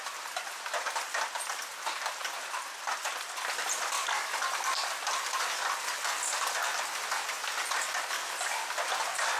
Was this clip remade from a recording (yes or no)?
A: yes